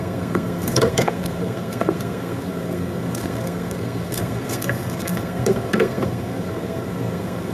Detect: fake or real fake